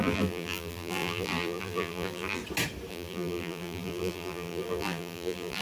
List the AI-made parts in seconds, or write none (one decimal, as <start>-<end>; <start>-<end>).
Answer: 0.0-2.4; 2.9-5.6